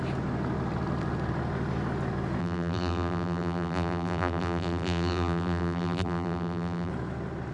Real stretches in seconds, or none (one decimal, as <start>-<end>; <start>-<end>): 0.0-2.4; 6.9-7.5